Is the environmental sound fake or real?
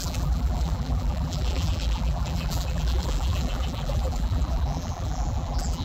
fake